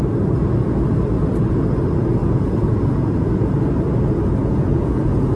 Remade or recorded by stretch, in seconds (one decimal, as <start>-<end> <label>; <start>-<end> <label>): 0.0-2.2 recorded; 2.2-3.6 remade; 3.6-4.4 recorded; 4.4-5.4 remade